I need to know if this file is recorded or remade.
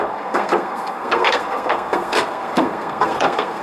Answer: remade